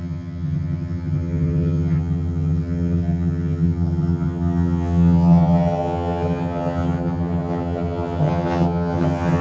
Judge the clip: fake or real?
fake